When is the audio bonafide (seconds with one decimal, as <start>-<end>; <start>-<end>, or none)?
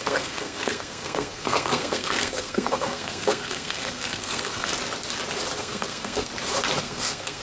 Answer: 4.7-5.6; 6.3-6.8